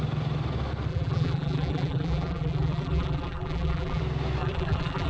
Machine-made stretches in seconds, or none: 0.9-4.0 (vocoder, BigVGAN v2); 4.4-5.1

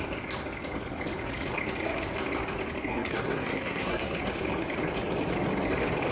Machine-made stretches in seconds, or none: 2.9-4.2 (codec, SNAC)

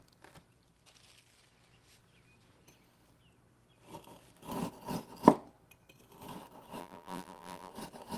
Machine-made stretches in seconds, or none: 6.8-7.7 (vocoder, BigVGAN v2)

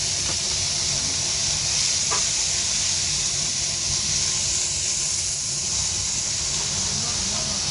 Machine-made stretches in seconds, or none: none